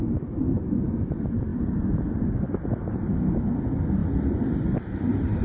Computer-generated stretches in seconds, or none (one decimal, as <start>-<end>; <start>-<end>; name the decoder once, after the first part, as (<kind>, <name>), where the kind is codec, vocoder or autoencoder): none